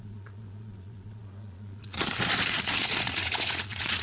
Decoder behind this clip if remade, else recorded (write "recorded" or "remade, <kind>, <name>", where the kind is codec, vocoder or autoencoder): remade, vocoder, Vocos